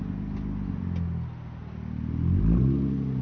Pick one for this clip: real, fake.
real